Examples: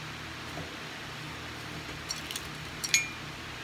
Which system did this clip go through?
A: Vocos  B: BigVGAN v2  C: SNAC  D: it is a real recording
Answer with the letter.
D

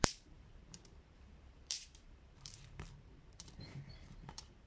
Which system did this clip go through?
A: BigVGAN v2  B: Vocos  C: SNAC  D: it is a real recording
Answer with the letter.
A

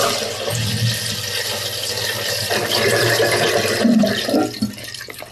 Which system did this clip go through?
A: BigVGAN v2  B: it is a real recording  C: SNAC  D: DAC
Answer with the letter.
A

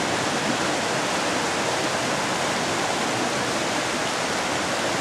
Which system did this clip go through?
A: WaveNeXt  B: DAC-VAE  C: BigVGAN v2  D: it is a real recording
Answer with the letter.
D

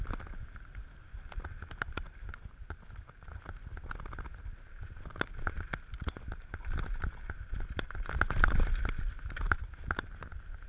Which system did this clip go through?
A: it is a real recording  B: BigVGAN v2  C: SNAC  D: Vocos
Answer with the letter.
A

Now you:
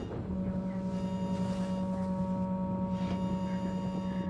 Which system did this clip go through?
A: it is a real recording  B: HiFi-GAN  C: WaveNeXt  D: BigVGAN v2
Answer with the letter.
A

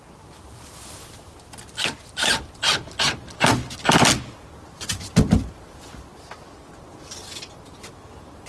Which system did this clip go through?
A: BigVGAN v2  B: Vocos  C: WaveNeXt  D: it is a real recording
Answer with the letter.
D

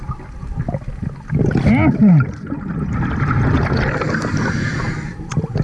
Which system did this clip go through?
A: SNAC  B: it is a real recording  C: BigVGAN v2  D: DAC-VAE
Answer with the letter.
B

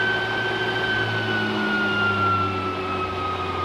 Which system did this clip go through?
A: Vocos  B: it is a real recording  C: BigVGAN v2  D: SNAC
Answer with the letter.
B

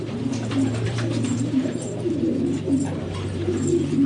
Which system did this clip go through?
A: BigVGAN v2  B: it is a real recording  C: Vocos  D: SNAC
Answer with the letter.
A